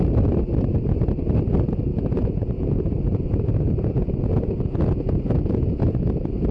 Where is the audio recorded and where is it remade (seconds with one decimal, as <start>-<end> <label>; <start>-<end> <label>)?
0.0-1.9 recorded; 1.9-5.8 remade; 5.8-6.5 recorded